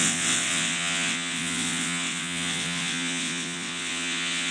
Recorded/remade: remade